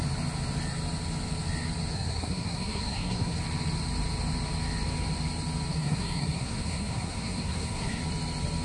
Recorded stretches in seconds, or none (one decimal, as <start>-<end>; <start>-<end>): 0.0-1.9; 3.4-5.7; 8.0-8.6